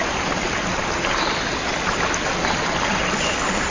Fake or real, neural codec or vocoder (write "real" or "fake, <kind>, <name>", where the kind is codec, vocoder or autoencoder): real